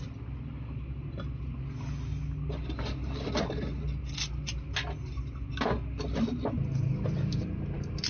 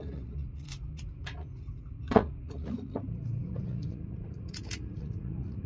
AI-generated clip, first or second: second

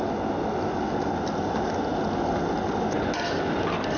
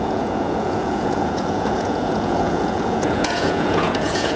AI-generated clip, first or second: second